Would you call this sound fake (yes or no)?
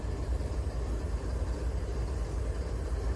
no